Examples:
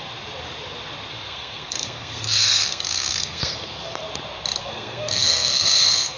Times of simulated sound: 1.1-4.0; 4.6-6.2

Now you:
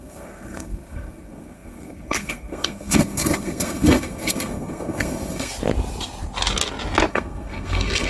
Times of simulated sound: 0.0-5.5; 7.1-8.1

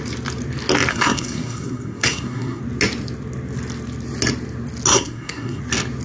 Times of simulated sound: 0.9-2.6; 4.9-5.6

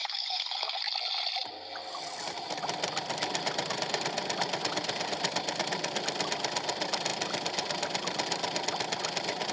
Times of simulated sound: 0.0-0.8

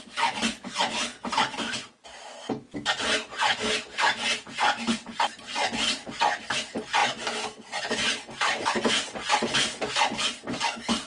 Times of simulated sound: none

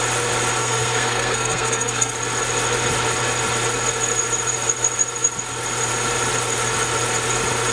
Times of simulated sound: 0.6-2.1

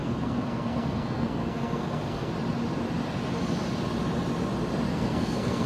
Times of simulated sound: 0.0-2.3; 4.9-5.7

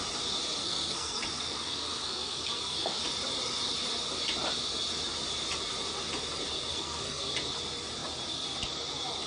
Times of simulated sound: 0.6-3.0; 6.7-7.2